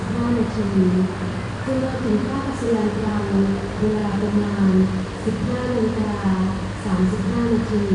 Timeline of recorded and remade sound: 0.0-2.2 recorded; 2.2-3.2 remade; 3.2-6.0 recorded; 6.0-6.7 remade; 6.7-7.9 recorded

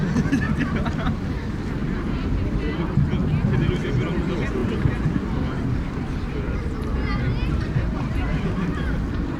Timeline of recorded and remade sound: 0.0-1.8 recorded; 1.8-2.8 remade; 2.8-4.6 recorded; 4.6-9.4 remade

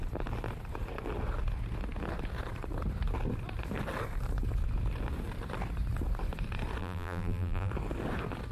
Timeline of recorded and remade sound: 0.0-6.8 recorded; 6.8-7.7 remade; 7.7-8.5 recorded

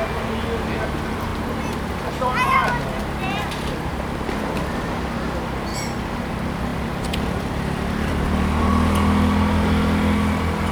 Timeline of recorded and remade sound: 0.0-2.6 recorded; 2.6-4.7 remade; 4.7-5.7 recorded; 5.7-6.3 remade; 6.3-6.7 recorded; 6.7-8.2 remade; 8.2-10.7 recorded

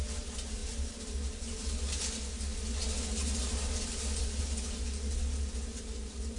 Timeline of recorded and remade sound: 0.0-6.4 recorded